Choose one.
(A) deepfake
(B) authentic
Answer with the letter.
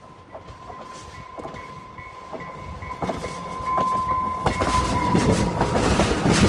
B